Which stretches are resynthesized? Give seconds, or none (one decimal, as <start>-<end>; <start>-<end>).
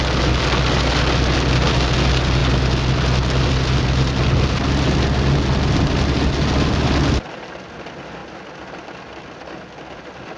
none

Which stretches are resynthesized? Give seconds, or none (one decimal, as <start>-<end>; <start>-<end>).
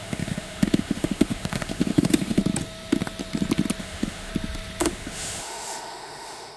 0.0-2.4; 3.8-4.3; 4.8-6.6